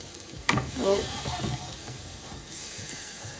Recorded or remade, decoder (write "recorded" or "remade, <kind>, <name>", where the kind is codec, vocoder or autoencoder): remade, codec, SNAC